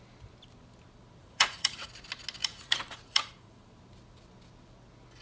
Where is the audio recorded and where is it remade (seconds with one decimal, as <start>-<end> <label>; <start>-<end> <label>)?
0.0-1.2 recorded; 1.2-1.9 remade; 1.9-2.4 recorded; 2.4-3.7 remade; 3.7-5.2 recorded